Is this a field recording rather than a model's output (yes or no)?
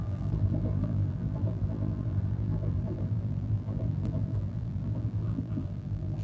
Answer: no